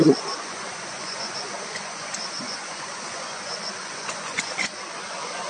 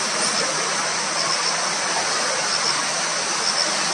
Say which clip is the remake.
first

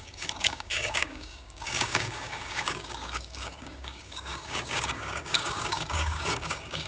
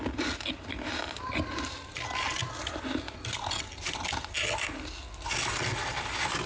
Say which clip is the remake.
first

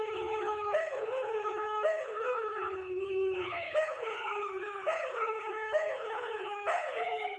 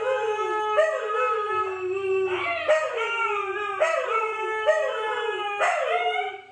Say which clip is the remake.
first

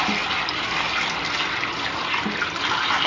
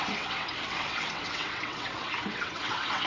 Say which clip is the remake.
second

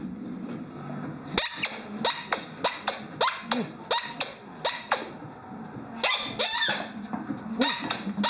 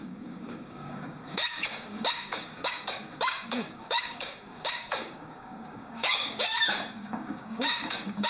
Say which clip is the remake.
second